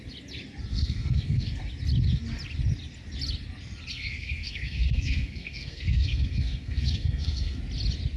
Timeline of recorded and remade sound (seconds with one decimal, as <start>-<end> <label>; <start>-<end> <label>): 0.0-0.7 recorded; 0.7-1.6 remade; 1.6-3.9 recorded; 3.9-7.6 remade; 7.6-8.2 recorded